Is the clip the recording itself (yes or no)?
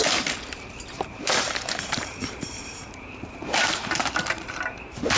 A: no